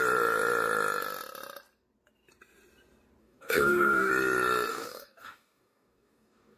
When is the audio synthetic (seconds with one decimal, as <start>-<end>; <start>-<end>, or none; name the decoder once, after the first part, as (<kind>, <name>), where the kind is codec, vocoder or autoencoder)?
3.2-4.1 (codec, DAC); 4.7-6.6